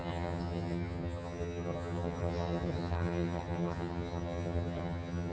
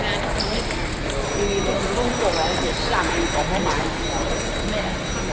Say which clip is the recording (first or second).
second